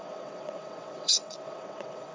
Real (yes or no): no